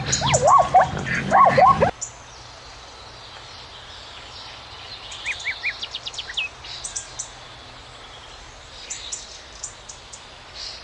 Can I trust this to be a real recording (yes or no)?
yes